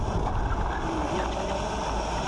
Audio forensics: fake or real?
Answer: real